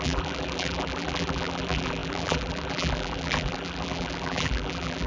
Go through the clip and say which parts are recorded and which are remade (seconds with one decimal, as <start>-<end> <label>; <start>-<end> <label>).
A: 0.0-5.1 remade